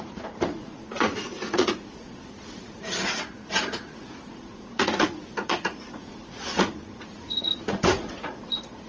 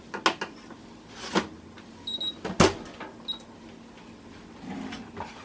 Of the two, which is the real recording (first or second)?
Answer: second